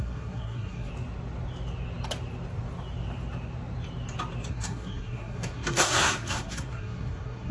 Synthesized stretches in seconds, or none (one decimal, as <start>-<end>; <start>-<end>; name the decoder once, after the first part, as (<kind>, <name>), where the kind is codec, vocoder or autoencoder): 0.0-0.9 (codec, SNAC); 4.5-7.5